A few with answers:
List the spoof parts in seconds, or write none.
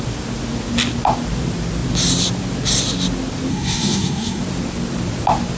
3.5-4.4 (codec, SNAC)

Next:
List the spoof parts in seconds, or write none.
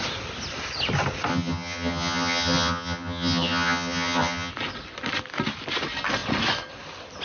1.3-4.5 (vocoder, HiFi-GAN)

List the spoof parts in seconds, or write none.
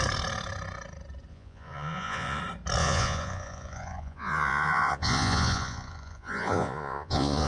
1.3-2.4 (vocoder, Vocos); 2.8-7.5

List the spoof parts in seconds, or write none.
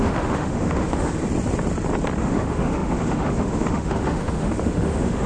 0.0-1.2 (autoencoder, DAC-VAE); 2.2-5.3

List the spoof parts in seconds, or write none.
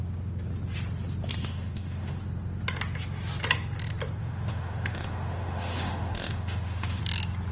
1.4-2.2 (autoencoder, DAC-VAE); 4.2-7.0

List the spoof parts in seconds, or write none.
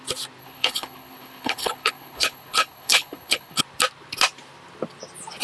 0.4-3.6 (codec, HILCodec)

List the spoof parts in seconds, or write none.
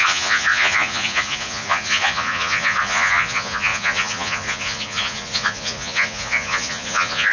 0.0-7.3 (vocoder, Vocos)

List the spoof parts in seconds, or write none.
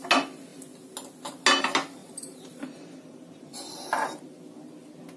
2.0-4.2 (vocoder, BigVGAN v2)